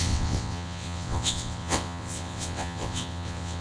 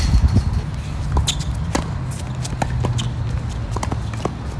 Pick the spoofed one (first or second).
first